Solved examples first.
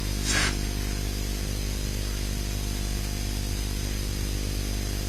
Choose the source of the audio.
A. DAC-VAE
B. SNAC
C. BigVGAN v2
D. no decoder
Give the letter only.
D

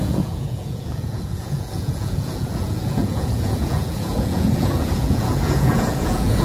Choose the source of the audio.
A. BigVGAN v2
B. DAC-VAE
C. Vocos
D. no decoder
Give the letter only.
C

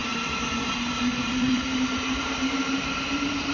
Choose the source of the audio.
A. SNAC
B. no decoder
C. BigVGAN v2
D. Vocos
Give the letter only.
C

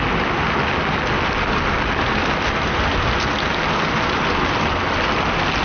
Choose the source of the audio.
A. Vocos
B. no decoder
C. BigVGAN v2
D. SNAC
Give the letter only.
B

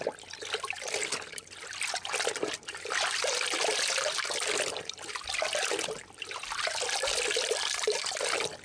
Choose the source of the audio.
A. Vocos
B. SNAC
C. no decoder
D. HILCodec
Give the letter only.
C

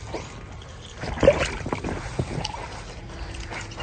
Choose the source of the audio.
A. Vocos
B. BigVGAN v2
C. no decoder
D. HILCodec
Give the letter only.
C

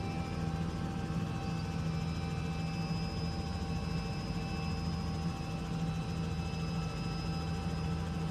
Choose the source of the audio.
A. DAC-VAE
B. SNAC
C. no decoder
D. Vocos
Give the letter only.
C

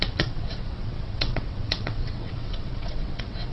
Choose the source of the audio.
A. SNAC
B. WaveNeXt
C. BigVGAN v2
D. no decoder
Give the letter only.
B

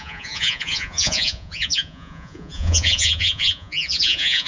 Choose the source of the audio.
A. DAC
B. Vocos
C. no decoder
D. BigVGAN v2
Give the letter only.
B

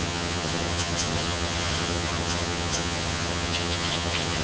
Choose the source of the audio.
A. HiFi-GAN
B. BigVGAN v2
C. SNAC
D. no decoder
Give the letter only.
A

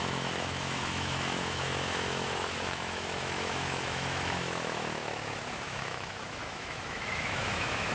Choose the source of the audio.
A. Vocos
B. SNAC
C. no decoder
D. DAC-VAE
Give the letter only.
D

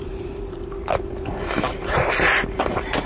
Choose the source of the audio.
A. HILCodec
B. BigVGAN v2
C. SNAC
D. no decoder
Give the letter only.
B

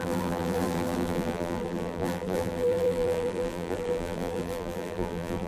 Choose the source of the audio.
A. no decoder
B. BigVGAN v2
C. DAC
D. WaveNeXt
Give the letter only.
B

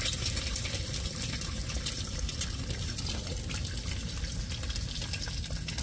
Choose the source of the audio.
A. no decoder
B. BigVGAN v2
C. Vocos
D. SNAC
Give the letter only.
A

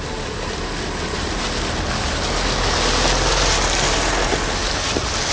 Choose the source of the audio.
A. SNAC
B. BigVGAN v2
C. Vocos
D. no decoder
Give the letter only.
D